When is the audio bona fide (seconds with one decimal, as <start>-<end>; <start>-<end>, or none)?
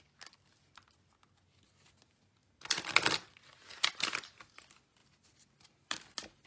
0.0-6.5